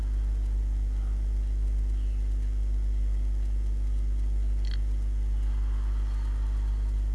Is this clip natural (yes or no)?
yes